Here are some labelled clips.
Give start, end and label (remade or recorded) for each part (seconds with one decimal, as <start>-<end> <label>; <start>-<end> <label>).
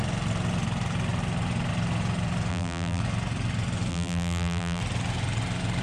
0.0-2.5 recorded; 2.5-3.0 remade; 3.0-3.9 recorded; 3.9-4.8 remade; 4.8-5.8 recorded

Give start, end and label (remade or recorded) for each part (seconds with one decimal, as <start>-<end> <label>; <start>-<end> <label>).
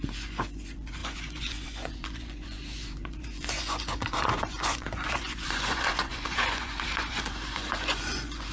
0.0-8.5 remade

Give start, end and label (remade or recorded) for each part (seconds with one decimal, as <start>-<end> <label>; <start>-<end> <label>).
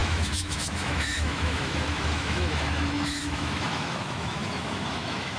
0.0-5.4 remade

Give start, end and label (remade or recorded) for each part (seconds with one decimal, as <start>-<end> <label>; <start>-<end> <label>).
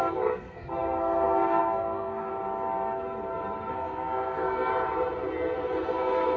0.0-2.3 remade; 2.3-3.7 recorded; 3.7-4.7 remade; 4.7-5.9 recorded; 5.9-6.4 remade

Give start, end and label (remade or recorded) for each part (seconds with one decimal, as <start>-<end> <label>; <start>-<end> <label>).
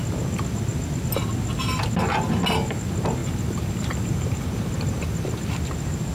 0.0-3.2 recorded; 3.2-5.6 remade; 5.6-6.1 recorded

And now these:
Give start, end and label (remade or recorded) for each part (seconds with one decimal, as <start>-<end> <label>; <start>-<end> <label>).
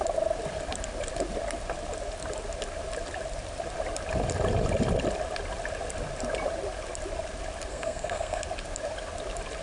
0.0-7.7 recorded; 7.7-8.4 remade; 8.4-9.6 recorded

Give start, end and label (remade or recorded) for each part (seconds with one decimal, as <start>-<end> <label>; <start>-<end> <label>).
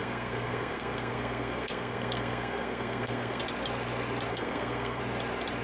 0.0-3.4 remade; 3.4-4.3 recorded; 4.3-5.0 remade; 5.0-5.6 recorded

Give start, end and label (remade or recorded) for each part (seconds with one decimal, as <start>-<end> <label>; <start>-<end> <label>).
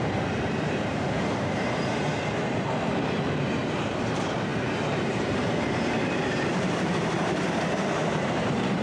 0.0-2.1 remade; 2.1-2.8 recorded; 2.8-8.8 remade